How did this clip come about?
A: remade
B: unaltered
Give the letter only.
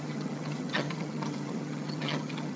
A